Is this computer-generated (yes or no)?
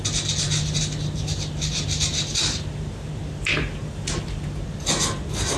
no